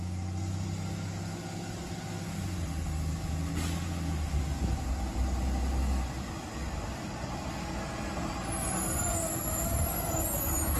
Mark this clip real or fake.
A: real